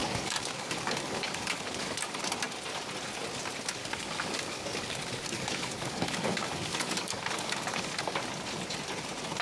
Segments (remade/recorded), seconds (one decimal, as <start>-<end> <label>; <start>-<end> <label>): 0.0-2.2 remade; 2.2-3.8 recorded; 3.8-8.2 remade; 8.2-9.4 recorded